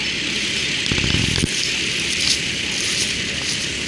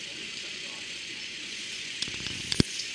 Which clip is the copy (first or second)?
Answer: second